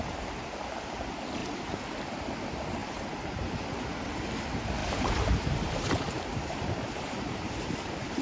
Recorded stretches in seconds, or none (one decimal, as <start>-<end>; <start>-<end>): 0.0-1.4; 2.2-2.8; 3.6-4.8

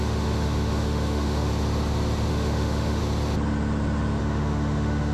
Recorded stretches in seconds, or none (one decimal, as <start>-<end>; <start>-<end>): 1.5-2.3; 3.0-4.2

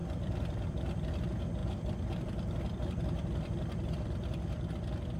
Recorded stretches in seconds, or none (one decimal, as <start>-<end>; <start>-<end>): 1.1-1.6; 4.7-5.2

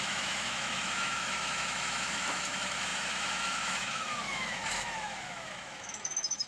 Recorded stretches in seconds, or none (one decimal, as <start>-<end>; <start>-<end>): none

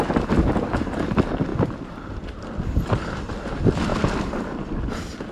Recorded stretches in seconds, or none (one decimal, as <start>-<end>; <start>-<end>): 0.0-1.5; 3.2-3.9; 4.4-5.3

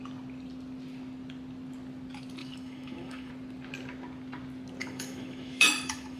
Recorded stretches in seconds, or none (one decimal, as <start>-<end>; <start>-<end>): 0.0-2.4; 3.3-4.8

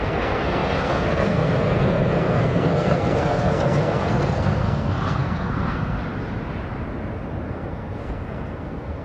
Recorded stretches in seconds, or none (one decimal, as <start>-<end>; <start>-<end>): 6.0-7.5